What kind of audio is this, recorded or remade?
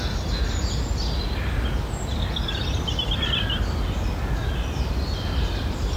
recorded